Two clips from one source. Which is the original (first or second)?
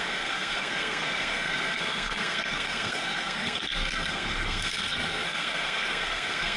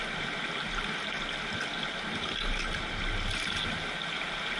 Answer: second